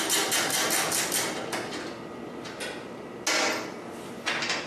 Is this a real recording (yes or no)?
yes